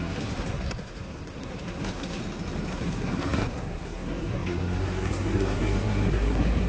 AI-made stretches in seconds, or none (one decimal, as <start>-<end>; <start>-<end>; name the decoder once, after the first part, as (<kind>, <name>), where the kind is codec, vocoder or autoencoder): 0.0-2.2 (codec, SNAC); 2.7-6.7